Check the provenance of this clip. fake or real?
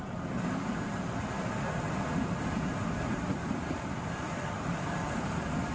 real